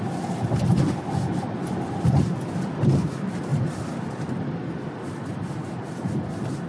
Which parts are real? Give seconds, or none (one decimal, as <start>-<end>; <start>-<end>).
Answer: 0.0-6.7